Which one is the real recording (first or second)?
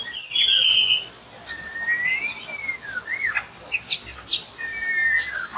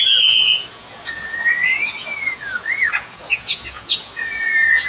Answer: first